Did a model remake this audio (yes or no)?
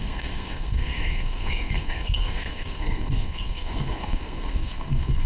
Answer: yes